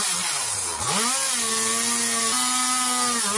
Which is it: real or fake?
real